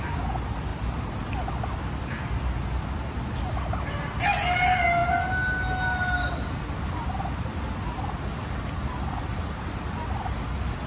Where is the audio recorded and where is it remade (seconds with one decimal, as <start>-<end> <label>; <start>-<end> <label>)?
0.0-10.9 recorded